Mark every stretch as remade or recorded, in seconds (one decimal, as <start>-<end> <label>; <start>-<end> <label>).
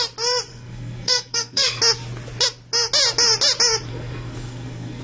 0.0-0.5 recorded; 0.5-1.8 remade; 1.8-3.9 recorded; 3.9-5.0 remade